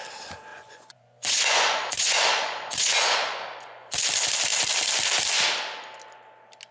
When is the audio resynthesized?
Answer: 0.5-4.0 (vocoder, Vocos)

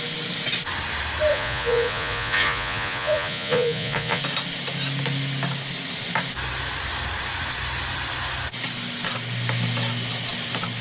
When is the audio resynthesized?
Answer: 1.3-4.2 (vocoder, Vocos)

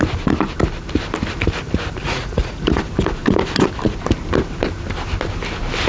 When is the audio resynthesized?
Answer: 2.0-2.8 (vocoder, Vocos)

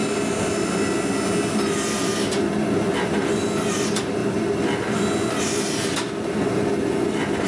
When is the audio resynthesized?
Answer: none

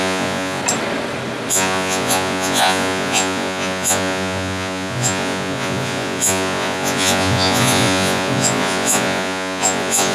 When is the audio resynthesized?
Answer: 0.0-0.6 (vocoder, Vocos); 1.5-10.1

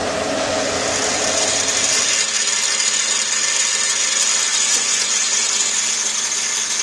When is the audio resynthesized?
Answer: 4.5-5.8 (vocoder, Vocos)

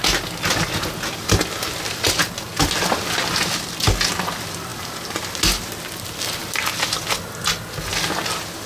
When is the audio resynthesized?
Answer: none